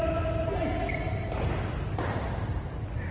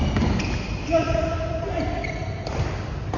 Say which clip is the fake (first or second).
second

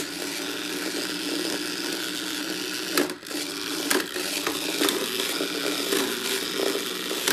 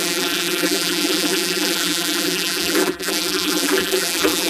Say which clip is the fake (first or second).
second